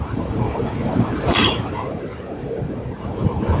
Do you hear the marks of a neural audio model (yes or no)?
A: yes